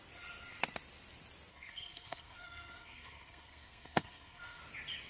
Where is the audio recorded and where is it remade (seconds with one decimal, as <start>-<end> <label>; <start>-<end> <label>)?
0.0-1.5 recorded; 1.5-4.6 remade; 4.6-5.1 recorded